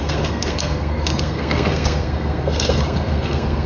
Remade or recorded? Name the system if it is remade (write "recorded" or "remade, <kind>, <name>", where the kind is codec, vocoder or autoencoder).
remade, codec, SNAC